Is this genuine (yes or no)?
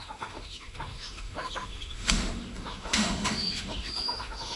no